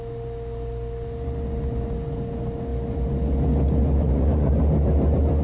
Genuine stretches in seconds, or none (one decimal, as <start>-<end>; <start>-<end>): 0.0-4.0; 4.5-5.4